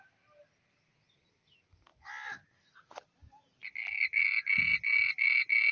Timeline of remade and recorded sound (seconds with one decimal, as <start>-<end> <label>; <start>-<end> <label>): 0.0-5.7 recorded